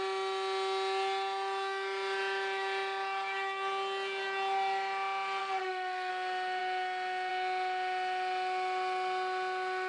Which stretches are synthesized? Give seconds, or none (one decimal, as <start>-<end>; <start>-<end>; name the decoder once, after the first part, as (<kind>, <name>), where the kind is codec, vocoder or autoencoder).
5.4-6.1 (codec, SNAC)